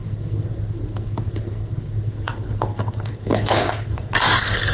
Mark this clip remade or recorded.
remade